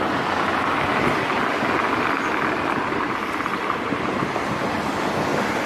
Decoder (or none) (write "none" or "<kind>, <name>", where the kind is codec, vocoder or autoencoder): none